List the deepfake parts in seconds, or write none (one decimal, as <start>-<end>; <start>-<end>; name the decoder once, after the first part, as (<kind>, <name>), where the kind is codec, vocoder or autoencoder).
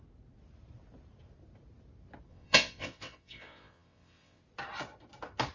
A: 2.3-4.4 (vocoder, WaveNeXt)